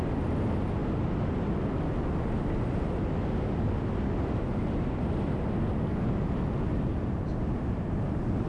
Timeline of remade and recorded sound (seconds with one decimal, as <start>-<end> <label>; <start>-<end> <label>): 0.0-8.5 recorded